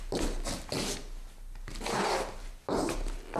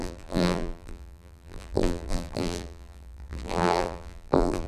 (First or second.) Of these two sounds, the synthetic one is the second